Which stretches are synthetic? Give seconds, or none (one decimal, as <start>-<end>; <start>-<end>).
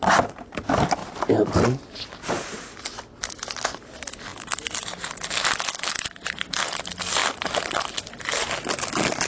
none